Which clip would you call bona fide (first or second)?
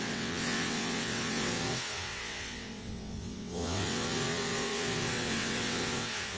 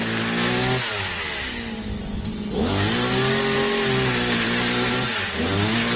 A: second